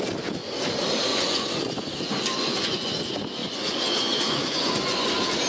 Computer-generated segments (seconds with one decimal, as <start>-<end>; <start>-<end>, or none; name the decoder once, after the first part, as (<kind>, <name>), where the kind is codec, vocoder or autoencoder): 1.1-1.7 (vocoder, Vocos); 2.3-3.0; 3.4-5.1